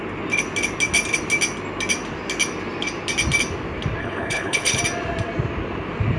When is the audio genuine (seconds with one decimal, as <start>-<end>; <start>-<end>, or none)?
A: 0.0-4.0; 4.8-6.2